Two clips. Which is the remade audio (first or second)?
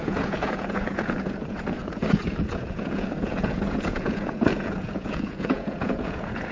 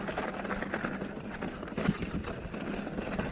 first